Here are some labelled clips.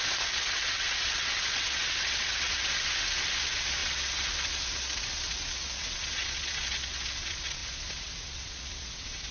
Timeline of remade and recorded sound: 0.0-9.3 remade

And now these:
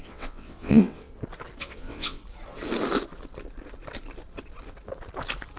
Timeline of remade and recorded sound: 0.0-1.1 remade; 1.1-1.6 recorded; 1.6-2.2 remade; 2.2-5.6 recorded

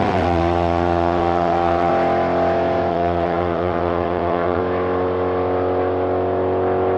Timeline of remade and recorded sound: 0.0-1.9 remade; 1.9-2.9 recorded; 2.9-4.6 remade; 4.6-7.0 recorded

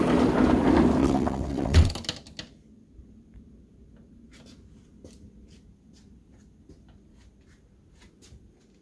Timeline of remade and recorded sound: 0.0-1.0 recorded; 1.0-1.9 remade; 1.9-8.8 recorded

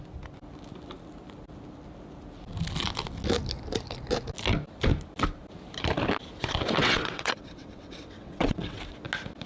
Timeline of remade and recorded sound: 0.0-6.8 recorded; 6.8-8.8 remade; 8.8-9.5 recorded